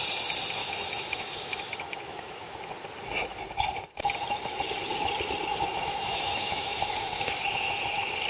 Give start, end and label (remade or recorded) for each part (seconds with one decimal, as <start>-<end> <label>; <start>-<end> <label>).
0.0-0.6 recorded; 0.6-2.6 remade; 2.6-5.5 recorded; 5.5-7.4 remade; 7.4-8.3 recorded

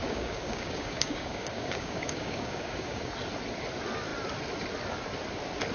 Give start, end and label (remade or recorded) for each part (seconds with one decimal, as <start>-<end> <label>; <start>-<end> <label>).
0.0-3.1 remade; 3.1-5.7 recorded

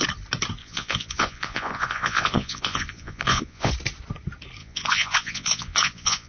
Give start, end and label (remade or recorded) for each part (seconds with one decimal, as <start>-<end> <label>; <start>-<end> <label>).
0.0-0.6 recorded; 0.6-3.7 remade; 3.7-4.6 recorded; 4.6-6.3 remade

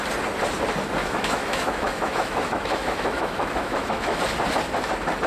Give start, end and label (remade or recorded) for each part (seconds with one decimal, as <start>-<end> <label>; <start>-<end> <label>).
0.0-1.0 recorded; 1.0-4.2 remade; 4.2-5.3 recorded

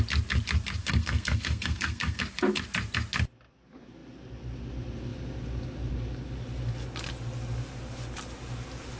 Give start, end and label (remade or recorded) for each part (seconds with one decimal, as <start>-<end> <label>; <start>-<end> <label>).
0.0-0.8 recorded; 0.8-2.2 remade; 2.2-9.0 recorded